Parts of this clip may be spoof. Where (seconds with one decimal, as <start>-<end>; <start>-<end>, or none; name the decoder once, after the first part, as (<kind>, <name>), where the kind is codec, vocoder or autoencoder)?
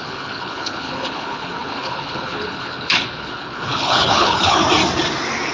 0.0-4.6 (codec, HILCodec)